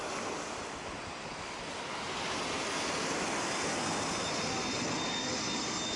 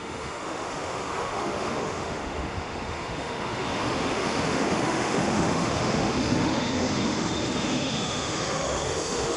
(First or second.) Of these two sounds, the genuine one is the first